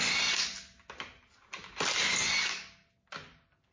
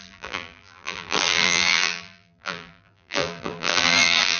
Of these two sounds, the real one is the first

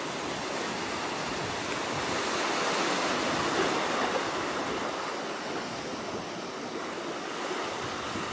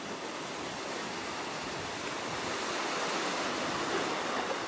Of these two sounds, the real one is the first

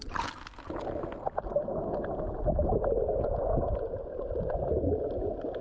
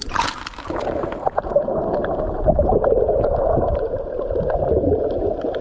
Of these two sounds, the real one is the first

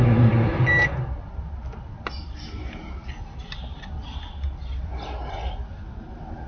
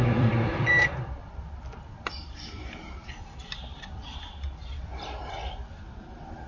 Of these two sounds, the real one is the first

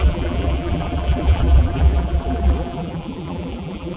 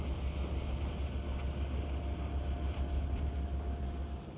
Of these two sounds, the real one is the second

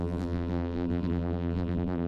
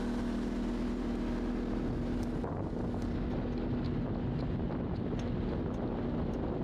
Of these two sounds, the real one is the second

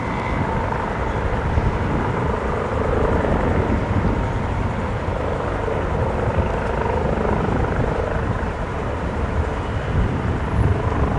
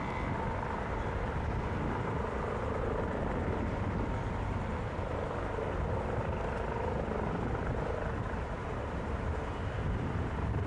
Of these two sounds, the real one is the second